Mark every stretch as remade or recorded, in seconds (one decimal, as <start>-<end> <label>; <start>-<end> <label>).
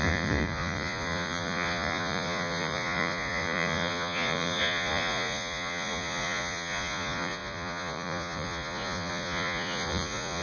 0.0-10.4 remade